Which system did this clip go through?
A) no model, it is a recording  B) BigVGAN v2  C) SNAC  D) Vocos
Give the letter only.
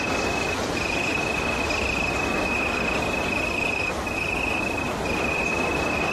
A